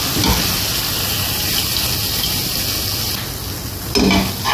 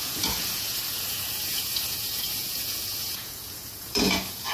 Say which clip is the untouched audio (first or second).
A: first